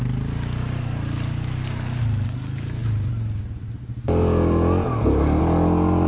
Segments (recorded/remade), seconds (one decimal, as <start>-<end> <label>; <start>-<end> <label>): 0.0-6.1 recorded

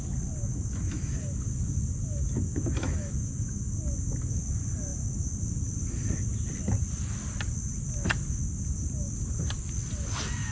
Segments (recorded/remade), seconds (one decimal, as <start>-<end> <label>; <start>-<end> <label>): 0.0-0.4 recorded; 0.4-1.1 remade; 1.1-2.5 recorded; 2.5-3.7 remade; 3.7-10.5 recorded

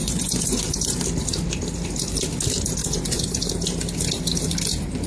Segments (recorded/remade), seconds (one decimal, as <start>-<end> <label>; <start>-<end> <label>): 0.0-1.0 remade; 1.0-2.8 recorded; 2.8-3.5 remade; 3.5-5.1 recorded

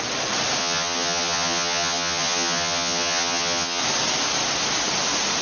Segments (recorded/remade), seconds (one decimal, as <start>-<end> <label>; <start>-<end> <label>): 0.0-0.6 recorded; 0.6-3.8 remade; 3.8-5.4 recorded

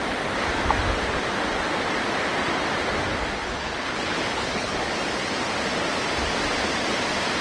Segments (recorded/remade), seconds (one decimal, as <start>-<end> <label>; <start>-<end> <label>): 0.0-3.4 recorded; 3.4-4.9 remade; 4.9-7.4 recorded

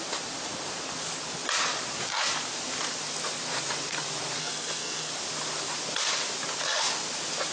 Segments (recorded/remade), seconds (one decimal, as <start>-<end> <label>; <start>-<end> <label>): 0.0-4.4 recorded; 4.4-5.1 remade; 5.1-7.5 recorded